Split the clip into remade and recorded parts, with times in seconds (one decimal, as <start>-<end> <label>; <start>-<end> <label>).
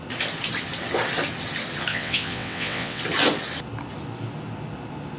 0.0-1.9 recorded; 1.9-3.0 remade; 3.0-5.2 recorded